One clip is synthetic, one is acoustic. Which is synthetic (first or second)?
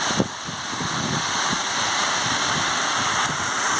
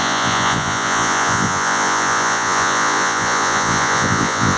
second